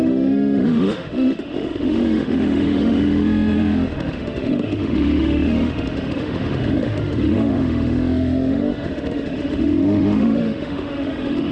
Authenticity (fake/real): fake